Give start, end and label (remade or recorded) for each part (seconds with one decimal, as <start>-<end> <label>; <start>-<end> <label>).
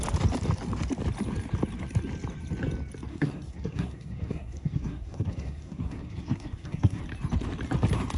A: 0.0-3.1 recorded; 3.1-7.0 remade; 7.0-8.2 recorded